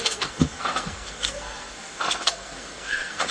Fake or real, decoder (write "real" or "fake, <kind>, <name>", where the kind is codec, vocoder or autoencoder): fake, codec, SNAC